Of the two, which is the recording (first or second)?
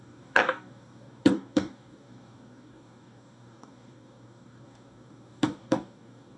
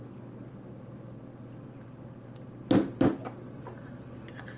second